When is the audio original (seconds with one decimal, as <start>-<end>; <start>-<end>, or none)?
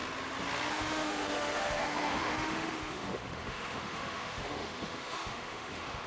0.0-0.7